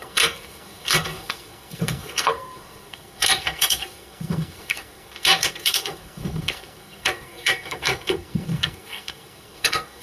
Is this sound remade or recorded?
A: remade